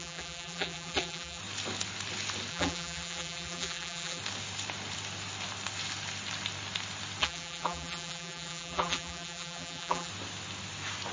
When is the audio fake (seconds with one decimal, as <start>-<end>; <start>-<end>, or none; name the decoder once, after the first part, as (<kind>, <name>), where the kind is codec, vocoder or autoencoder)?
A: 0.0-1.4 (vocoder, BigVGAN v2); 2.5-4.2; 7.2-10.1